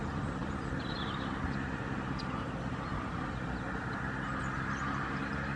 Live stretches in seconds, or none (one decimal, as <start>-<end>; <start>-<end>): 0.0-5.6